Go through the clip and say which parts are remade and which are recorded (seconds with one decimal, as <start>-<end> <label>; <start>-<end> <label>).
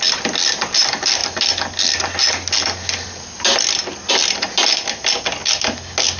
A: 0.0-6.2 recorded